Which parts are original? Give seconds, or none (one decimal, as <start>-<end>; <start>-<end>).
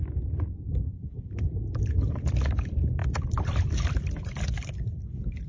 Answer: 0.0-3.0; 4.4-5.5